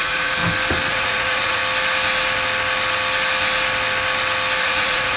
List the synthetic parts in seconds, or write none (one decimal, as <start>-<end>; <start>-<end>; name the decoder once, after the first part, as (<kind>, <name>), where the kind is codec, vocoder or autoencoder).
0.0-0.4 (vocoder, Vocos); 0.9-1.6; 4.6-5.2